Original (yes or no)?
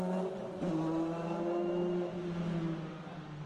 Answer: yes